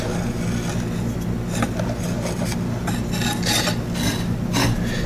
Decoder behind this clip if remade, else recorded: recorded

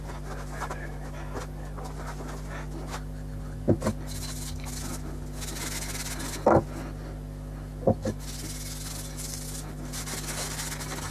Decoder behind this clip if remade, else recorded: recorded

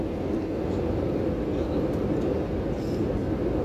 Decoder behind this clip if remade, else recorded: recorded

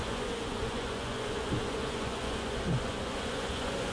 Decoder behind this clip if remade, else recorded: remade, vocoder, Vocos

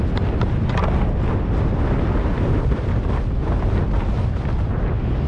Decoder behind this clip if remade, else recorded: recorded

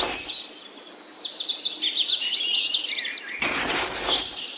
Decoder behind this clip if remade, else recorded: recorded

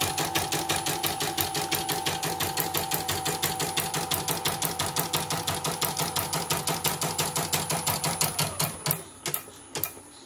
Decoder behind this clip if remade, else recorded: recorded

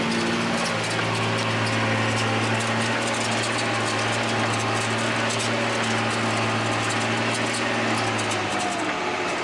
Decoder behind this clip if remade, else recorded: recorded